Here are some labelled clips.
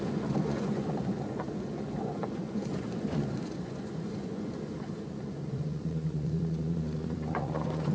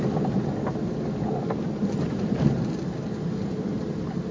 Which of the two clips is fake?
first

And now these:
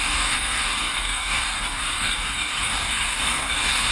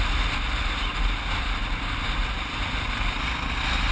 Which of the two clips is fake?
first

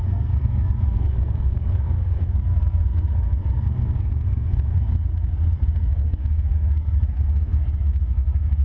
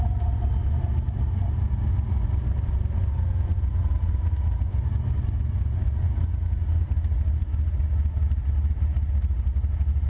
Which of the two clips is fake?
first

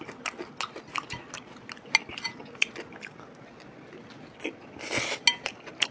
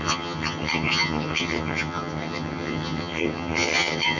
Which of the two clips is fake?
second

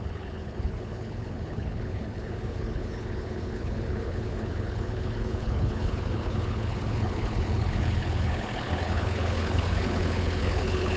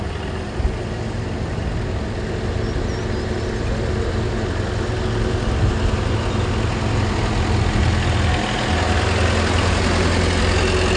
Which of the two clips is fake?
first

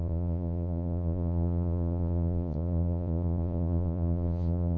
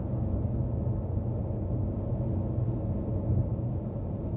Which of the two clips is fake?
first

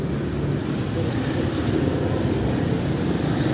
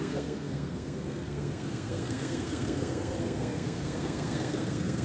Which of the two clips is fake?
second